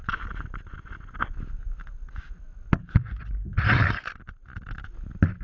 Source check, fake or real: real